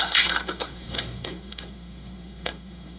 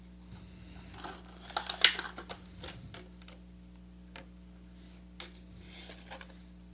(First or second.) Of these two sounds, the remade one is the first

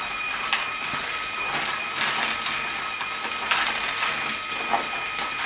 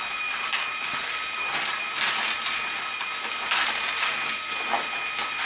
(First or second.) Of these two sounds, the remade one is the first